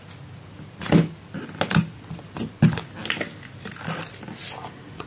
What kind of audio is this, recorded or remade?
recorded